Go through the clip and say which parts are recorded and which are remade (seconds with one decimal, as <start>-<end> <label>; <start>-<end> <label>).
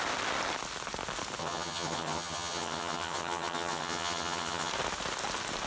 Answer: 0.0-1.4 recorded; 1.4-4.7 remade; 4.7-5.7 recorded